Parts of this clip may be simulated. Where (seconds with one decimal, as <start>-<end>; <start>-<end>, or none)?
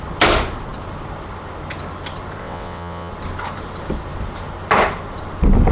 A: 2.4-3.1